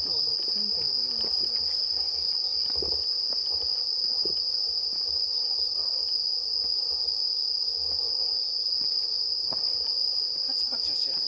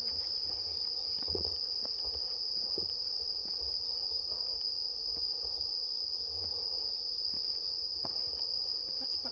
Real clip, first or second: first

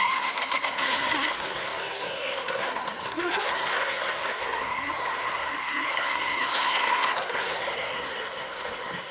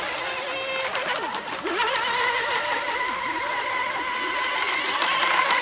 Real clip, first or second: second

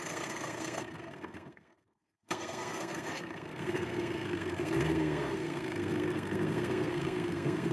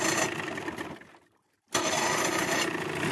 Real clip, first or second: second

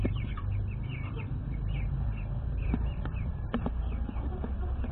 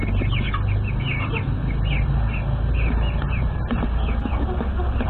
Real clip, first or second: second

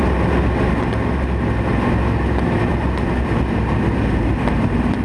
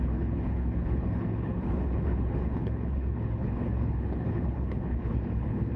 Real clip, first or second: first